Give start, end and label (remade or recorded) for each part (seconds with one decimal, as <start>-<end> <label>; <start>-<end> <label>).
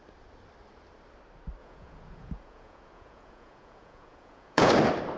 0.0-1.6 recorded; 1.6-4.7 remade; 4.7-5.2 recorded